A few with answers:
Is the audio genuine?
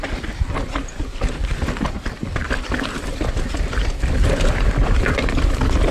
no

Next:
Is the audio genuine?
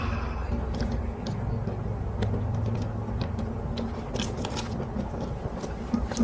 yes